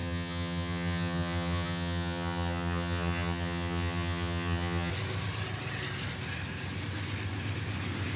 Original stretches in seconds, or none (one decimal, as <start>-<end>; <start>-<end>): 4.9-8.2